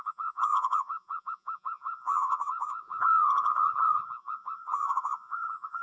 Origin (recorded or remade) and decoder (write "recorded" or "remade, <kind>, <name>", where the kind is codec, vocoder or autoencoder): remade, vocoder, Vocos